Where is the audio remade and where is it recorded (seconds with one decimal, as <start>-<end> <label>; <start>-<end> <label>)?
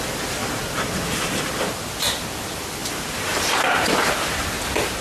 0.0-0.4 recorded; 0.4-1.5 remade; 1.5-2.8 recorded; 2.8-4.5 remade; 4.5-5.0 recorded